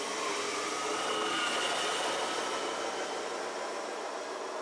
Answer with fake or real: real